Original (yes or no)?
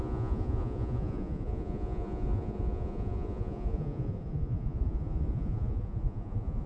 no